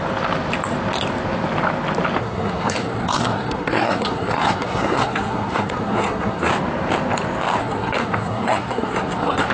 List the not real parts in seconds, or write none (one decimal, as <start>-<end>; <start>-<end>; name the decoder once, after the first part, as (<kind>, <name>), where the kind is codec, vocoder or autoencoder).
2.2-6.5 (codec, SNAC); 7.6-9.5